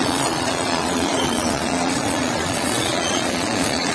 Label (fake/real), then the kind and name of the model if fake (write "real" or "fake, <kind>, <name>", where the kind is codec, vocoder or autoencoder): fake, vocoder, Vocos